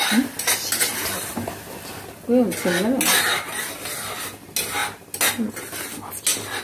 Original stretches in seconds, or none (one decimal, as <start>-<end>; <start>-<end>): 0.0-6.6